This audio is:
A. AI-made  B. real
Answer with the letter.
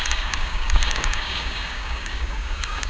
A